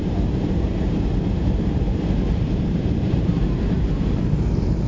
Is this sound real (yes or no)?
no